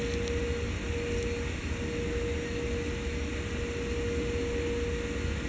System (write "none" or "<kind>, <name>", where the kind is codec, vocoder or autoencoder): none